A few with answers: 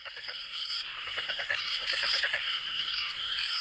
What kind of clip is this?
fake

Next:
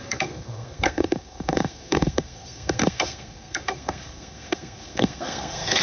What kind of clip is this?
fake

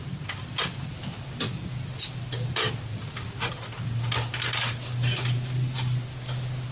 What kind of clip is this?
real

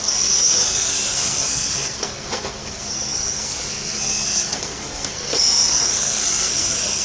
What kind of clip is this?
fake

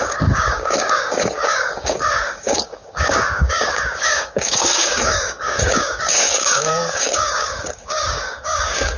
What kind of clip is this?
fake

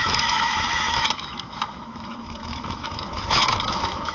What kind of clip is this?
fake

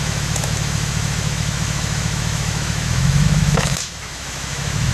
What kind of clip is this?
fake